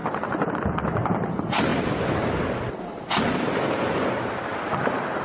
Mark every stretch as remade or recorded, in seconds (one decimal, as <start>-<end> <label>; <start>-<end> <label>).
0.0-0.5 recorded; 0.5-1.7 remade; 1.7-4.6 recorded; 4.6-5.2 remade